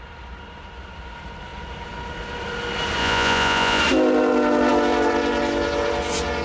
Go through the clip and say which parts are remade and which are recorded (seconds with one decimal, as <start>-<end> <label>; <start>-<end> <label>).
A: 0.0-3.0 recorded; 3.0-3.8 remade; 3.8-6.4 recorded